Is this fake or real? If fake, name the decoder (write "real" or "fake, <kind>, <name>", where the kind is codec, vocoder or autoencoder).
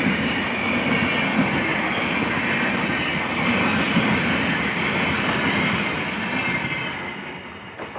real